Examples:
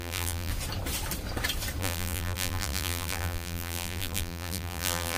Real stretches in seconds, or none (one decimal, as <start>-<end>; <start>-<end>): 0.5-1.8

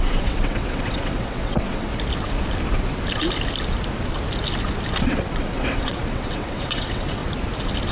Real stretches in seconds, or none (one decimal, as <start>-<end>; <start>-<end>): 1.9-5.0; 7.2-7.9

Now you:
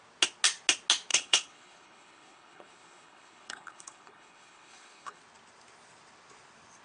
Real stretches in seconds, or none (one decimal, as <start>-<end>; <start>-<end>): 0.0-1.1; 5.2-6.8

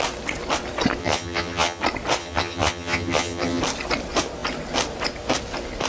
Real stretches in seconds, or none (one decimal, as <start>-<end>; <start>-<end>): 0.0-1.0; 1.8-2.2; 3.6-5.9

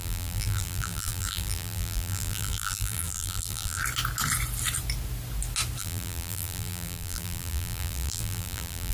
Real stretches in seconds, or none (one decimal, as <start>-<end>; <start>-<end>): 3.8-5.8

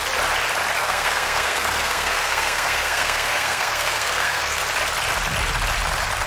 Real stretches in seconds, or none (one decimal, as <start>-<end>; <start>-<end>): 0.0-0.8; 4.6-6.3